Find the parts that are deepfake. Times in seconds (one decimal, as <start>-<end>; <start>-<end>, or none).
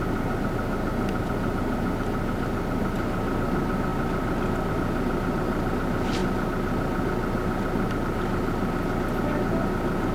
none